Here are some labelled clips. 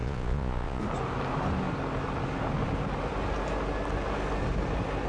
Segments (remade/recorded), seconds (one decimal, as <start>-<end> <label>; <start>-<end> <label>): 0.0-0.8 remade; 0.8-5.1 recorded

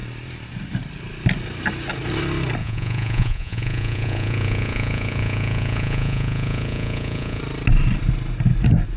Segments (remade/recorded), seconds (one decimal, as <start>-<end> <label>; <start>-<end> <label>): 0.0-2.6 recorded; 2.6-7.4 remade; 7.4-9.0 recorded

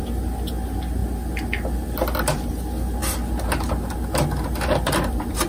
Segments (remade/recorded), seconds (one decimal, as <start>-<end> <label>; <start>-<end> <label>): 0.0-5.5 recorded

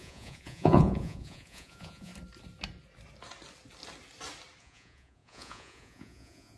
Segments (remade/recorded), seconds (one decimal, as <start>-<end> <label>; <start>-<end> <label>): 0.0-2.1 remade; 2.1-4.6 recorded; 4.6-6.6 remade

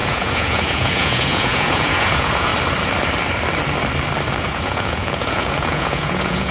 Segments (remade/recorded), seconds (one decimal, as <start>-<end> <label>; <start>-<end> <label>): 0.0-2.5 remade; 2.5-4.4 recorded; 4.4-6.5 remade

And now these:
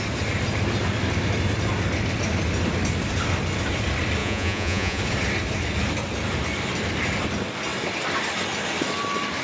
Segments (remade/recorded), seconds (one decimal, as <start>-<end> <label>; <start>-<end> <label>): 0.0-4.2 recorded; 4.2-5.0 remade; 5.0-9.4 recorded